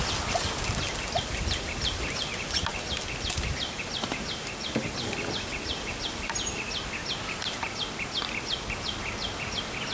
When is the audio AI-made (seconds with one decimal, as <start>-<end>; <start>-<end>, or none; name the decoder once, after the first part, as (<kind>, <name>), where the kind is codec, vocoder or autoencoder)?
none